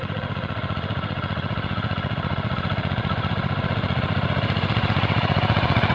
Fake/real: fake